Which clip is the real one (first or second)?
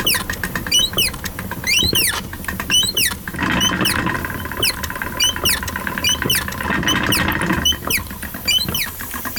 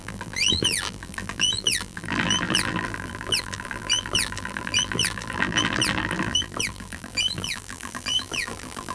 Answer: first